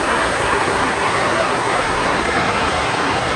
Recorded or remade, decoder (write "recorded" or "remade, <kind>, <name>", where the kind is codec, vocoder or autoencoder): remade, codec, SNAC